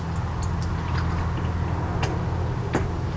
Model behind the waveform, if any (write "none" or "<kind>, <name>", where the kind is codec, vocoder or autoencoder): none